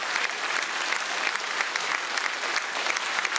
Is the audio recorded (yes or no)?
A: yes